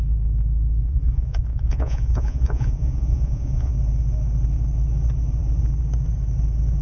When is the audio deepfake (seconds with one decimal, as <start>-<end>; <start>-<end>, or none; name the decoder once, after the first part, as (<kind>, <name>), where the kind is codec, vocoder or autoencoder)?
0.8-3.7 (vocoder, Vocos)